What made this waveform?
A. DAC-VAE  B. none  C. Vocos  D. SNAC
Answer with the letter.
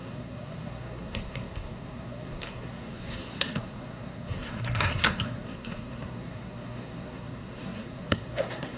D